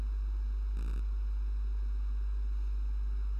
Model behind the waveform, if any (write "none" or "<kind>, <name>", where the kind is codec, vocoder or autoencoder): none